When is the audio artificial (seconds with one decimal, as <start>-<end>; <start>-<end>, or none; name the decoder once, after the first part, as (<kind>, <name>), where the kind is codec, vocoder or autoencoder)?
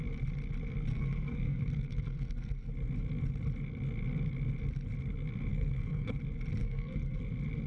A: 0.9-2.7 (codec, SNAC); 5.5-6.1; 6.6-7.2